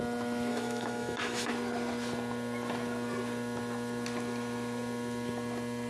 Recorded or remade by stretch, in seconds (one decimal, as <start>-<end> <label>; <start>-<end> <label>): 0.0-0.5 recorded; 0.5-1.5 remade; 1.5-5.9 recorded